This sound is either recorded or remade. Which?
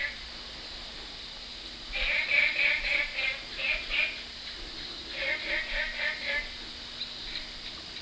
recorded